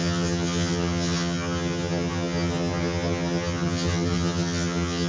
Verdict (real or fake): fake